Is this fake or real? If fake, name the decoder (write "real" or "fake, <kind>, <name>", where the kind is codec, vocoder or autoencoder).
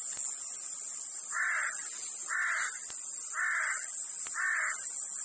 real